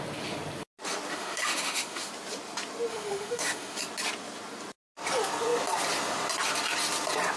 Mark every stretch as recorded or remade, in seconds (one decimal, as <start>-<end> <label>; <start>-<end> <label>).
0.0-1.1 recorded; 1.1-2.1 remade; 2.1-2.9 recorded; 2.9-3.8 remade; 3.8-7.4 recorded